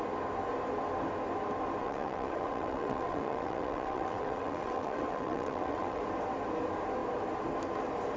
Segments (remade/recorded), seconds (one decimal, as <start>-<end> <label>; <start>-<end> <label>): 0.0-1.8 recorded; 1.8-6.0 remade; 6.0-8.2 recorded